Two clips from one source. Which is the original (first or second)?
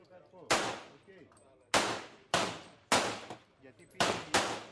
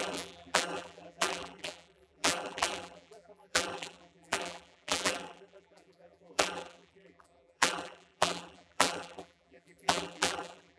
first